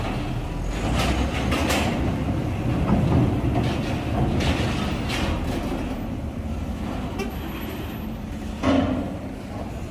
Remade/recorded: recorded